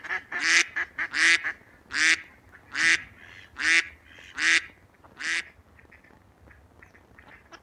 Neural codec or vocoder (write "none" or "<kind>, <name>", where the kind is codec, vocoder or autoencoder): none